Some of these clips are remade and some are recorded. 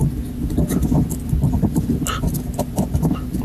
recorded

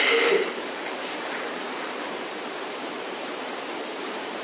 remade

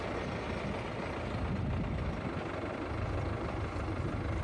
recorded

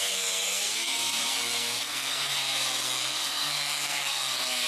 remade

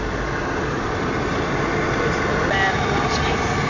recorded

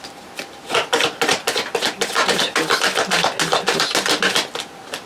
recorded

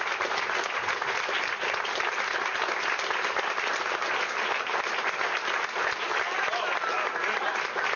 recorded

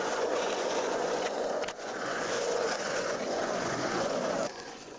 remade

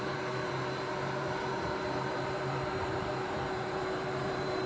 remade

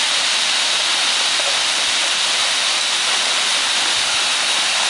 recorded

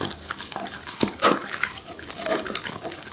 remade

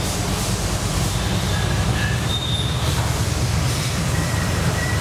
remade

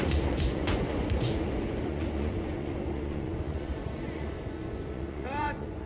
remade